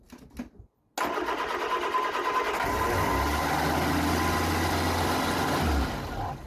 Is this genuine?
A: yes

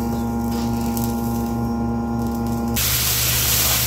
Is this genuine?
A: yes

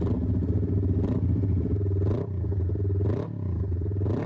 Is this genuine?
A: yes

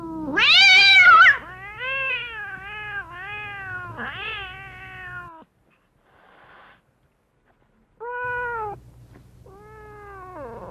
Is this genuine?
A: yes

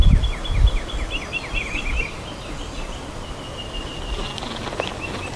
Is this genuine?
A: yes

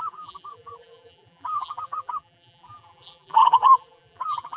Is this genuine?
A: no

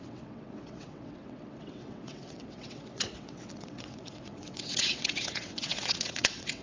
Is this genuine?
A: no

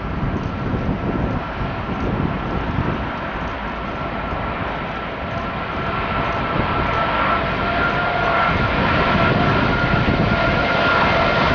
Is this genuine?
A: yes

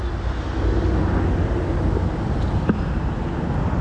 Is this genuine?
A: yes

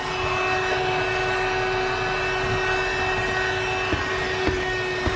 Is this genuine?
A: yes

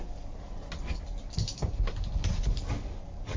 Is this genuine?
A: yes